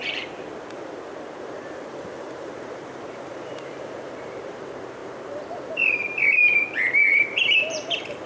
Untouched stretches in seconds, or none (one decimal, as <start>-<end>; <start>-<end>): 6.5-7.1